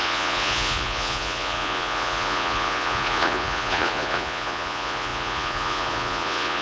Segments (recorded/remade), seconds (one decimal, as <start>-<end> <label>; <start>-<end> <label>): 0.0-6.6 remade